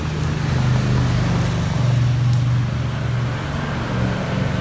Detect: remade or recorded recorded